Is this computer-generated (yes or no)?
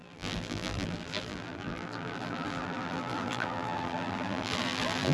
yes